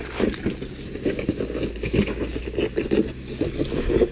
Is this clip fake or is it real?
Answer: real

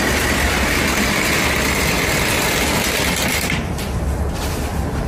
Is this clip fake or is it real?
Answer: fake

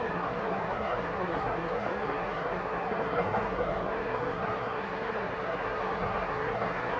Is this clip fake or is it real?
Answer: fake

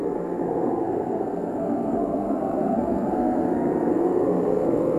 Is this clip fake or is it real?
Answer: fake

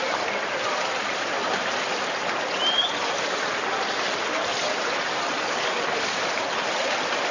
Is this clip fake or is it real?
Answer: real